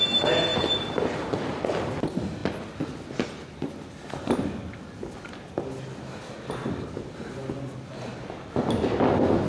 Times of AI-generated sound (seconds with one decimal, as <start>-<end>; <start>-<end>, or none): 0.5-1.8